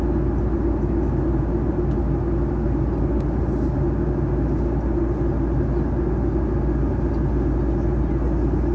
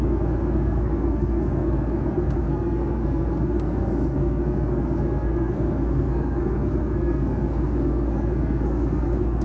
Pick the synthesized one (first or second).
second